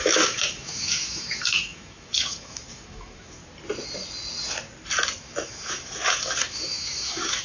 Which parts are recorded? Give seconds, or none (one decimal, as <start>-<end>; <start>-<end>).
3.4-5.2